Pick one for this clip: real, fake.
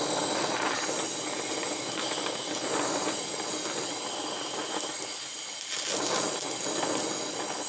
real